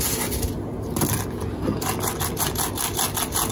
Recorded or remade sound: recorded